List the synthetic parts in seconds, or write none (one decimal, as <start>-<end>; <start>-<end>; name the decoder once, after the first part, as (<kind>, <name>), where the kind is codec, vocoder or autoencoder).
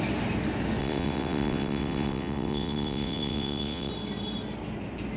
0.8-3.9 (vocoder, WaveNeXt)